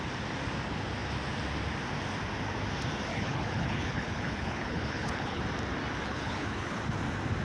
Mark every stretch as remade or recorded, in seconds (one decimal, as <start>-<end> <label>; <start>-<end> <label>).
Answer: 0.0-3.1 recorded; 3.1-5.4 remade; 5.4-6.0 recorded; 6.0-6.8 remade; 6.8-7.4 recorded